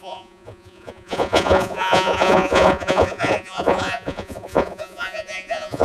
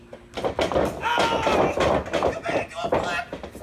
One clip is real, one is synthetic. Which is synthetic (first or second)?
first